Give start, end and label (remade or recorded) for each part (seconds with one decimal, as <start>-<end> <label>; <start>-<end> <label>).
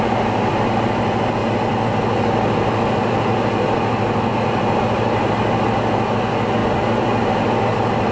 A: 0.0-6.6 recorded; 6.6-8.1 remade